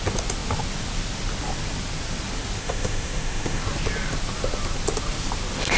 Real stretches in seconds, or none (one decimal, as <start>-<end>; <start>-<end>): 0.0-2.6; 3.6-5.8